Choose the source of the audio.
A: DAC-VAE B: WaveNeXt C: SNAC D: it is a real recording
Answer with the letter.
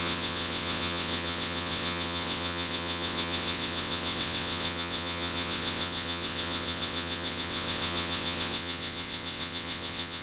B